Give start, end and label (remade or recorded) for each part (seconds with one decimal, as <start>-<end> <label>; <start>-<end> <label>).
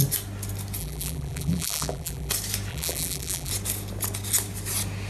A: 0.0-0.8 recorded; 0.8-2.3 remade; 2.3-2.7 recorded; 2.7-3.5 remade; 3.5-5.1 recorded